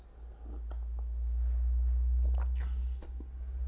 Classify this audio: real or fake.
real